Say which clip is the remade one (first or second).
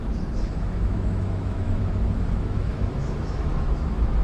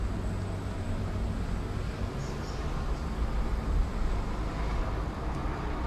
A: first